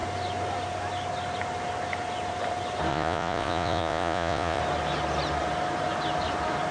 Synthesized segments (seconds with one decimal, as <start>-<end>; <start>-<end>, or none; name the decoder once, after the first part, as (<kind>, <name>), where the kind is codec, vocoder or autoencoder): 2.9-4.6 (vocoder, Vocos)